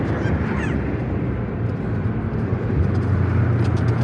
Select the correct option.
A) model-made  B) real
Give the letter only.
B